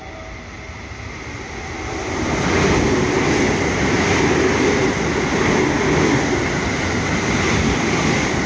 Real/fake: real